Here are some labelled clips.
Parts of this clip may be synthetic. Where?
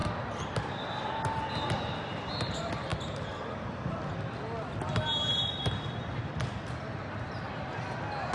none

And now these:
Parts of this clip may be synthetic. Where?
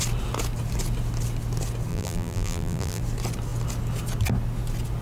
1.9-3.0 (vocoder, BigVGAN v2)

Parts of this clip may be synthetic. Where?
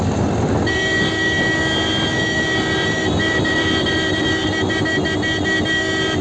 2.8-4.2 (vocoder, BigVGAN v2)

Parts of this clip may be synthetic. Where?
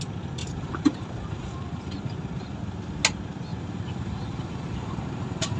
0.4-2.6 (vocoder, BigVGAN v2); 3.5-5.6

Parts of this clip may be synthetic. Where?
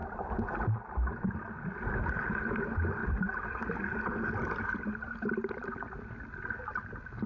none